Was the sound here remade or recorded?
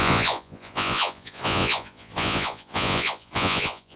remade